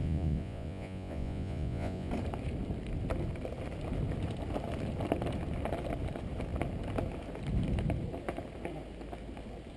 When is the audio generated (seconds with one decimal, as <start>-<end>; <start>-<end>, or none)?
0.0-2.1